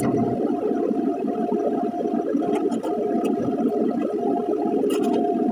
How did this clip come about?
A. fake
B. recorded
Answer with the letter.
B